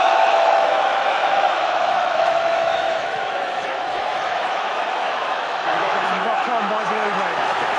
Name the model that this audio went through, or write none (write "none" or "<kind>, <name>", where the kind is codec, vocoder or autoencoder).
autoencoder, DAC-VAE